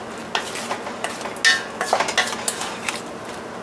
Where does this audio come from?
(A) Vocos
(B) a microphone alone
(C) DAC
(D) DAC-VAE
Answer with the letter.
B